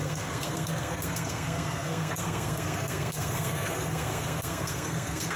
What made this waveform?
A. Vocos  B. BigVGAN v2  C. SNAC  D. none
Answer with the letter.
C